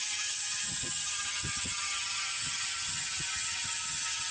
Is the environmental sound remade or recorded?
remade